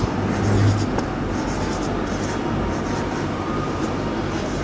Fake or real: real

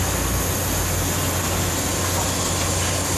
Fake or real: real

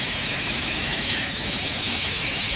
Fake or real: fake